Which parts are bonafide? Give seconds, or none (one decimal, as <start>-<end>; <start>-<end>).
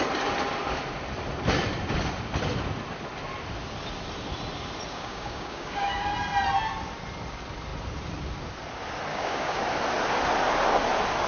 0.0-4.9; 6.1-9.1; 9.6-11.3